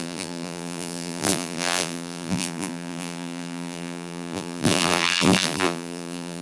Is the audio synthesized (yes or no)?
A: yes